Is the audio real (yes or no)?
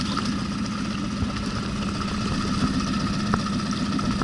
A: yes